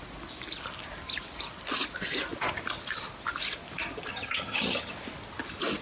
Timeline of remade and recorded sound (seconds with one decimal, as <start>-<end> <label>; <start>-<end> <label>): 0.0-4.1 recorded; 4.1-4.9 remade; 4.9-5.8 recorded